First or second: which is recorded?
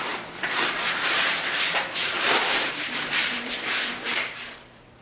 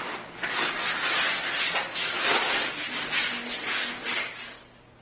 second